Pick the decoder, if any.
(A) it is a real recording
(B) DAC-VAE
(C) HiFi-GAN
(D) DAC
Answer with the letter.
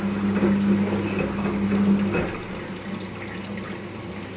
A